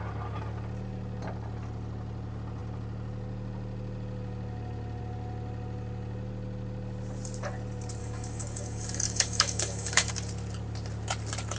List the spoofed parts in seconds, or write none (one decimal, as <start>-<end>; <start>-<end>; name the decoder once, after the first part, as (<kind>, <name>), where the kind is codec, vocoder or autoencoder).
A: 8.0-10.1 (codec, DAC)